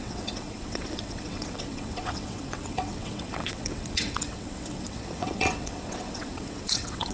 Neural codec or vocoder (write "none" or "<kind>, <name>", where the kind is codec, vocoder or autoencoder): vocoder, WaveNeXt